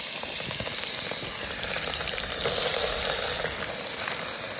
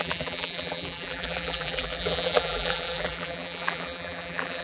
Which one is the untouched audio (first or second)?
first